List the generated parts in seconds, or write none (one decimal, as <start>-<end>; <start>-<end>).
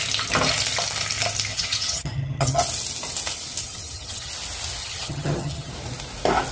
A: 1.5-2.6; 3.6-4.3; 4.8-5.7